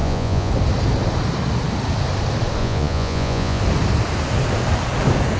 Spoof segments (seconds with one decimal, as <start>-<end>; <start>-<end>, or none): 0.0-0.5; 2.6-3.6